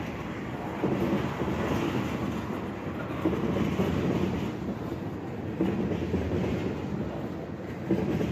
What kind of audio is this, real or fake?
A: real